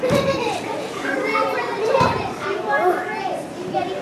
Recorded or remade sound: remade